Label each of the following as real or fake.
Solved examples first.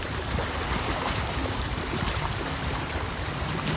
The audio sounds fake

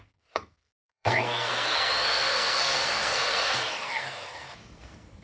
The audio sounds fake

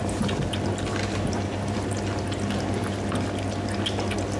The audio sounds real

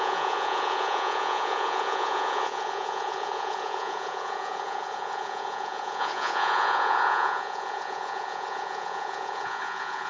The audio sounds fake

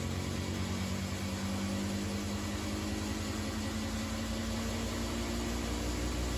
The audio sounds real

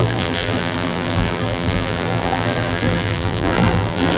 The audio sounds fake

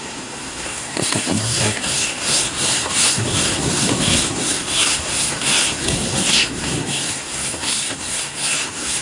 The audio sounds fake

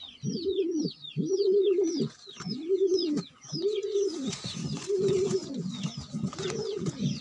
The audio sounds fake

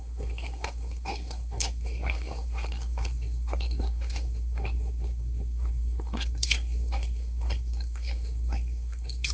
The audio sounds fake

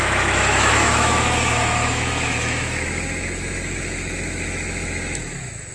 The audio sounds fake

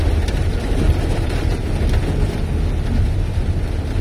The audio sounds real